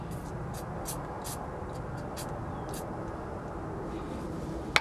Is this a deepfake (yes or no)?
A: no